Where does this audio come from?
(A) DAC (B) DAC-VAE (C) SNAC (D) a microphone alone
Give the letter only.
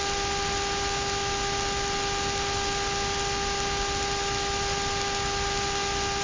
D